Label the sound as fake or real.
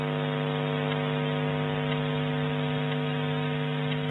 real